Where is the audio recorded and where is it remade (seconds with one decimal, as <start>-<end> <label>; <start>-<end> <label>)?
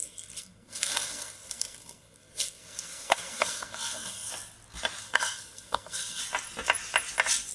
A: 0.0-4.3 remade; 4.3-5.0 recorded; 5.0-6.2 remade; 6.2-7.5 recorded